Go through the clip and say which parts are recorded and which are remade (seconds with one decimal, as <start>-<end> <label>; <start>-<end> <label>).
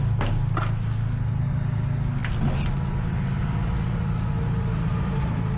0.0-5.6 recorded